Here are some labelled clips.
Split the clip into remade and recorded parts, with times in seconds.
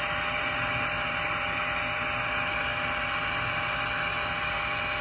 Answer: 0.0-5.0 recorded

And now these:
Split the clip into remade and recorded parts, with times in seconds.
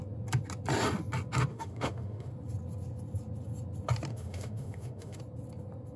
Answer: 0.0-1.5 recorded; 1.5-2.3 remade; 2.3-4.1 recorded; 4.1-5.2 remade; 5.2-6.0 recorded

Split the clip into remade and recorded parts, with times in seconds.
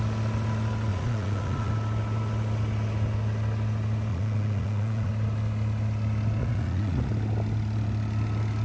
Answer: 0.0-0.9 recorded; 0.9-1.7 remade; 1.7-4.1 recorded; 4.1-5.1 remade; 5.1-6.4 recorded; 6.4-7.1 remade; 7.1-8.6 recorded